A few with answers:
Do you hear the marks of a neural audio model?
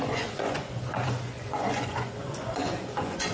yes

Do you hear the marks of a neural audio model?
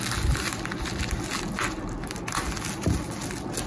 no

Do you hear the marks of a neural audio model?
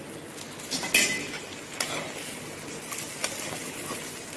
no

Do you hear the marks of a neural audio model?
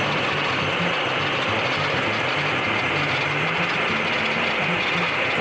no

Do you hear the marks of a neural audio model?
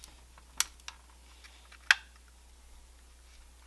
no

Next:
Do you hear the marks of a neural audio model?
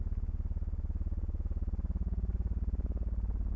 no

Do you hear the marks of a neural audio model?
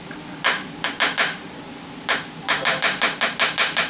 no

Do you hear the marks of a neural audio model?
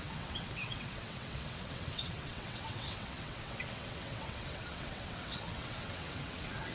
yes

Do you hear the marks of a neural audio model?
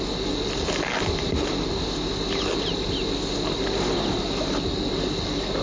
no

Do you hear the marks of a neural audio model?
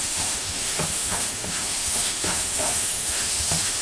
yes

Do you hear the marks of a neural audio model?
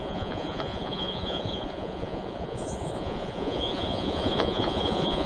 yes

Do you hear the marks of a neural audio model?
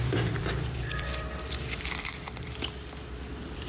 yes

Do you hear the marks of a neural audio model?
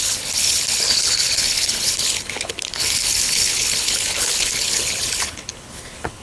yes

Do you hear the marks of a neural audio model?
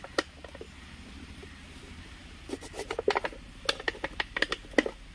no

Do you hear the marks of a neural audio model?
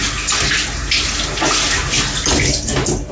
no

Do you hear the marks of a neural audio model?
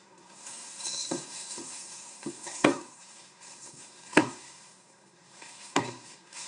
yes